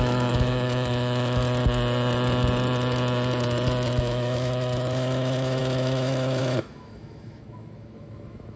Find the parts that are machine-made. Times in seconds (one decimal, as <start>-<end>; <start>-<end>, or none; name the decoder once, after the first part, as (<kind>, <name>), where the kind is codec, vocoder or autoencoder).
0.0-1.4 (autoencoder, DAC-VAE); 4.0-8.6